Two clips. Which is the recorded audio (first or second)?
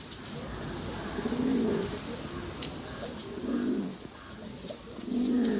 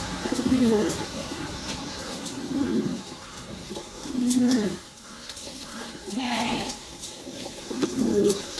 first